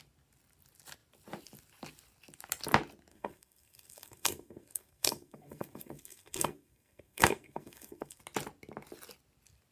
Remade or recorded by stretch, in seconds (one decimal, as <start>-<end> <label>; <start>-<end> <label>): 0.0-3.1 recorded; 3.1-8.2 remade; 8.2-9.7 recorded